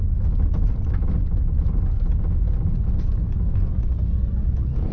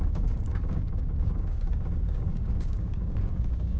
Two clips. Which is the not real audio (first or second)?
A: second